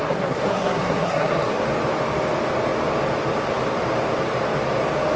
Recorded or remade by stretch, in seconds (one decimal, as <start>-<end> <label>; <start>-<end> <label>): 0.0-1.6 remade; 1.6-5.2 recorded